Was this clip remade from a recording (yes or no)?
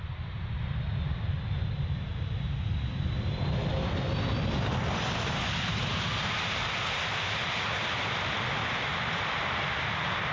no